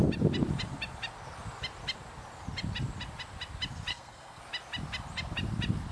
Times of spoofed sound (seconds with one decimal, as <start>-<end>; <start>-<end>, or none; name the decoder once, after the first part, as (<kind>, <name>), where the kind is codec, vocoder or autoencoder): 3.9-4.4 (codec, SNAC)